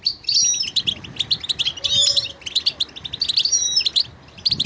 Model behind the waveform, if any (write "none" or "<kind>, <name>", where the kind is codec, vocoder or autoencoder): none